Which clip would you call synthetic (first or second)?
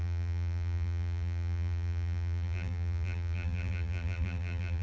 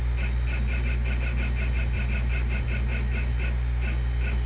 first